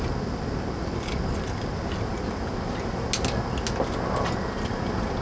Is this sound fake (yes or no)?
no